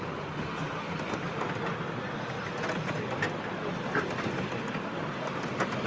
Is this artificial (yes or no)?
no